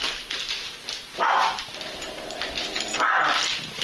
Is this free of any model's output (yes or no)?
yes